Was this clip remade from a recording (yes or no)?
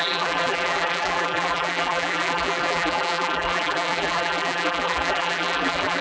yes